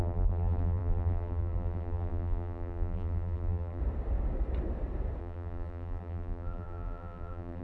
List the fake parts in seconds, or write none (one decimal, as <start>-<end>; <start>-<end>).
0.0-3.8; 5.2-7.6